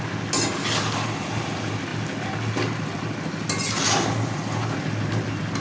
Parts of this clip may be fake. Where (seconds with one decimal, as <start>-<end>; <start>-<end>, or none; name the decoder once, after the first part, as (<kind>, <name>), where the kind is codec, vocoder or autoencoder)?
none